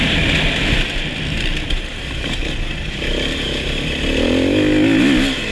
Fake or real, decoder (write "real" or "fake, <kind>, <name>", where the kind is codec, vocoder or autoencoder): real